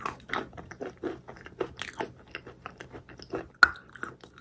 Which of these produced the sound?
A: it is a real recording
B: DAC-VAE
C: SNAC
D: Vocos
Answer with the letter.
A